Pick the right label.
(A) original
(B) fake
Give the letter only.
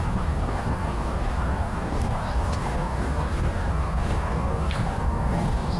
B